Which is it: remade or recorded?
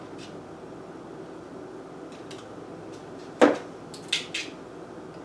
recorded